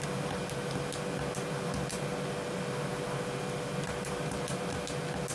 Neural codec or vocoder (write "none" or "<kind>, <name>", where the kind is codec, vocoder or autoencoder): none